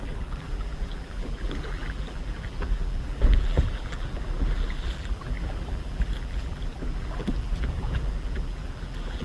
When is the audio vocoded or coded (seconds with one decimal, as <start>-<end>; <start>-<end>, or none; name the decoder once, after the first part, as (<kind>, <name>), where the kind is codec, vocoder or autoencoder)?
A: 0.0-9.2 (vocoder, BigVGAN v2)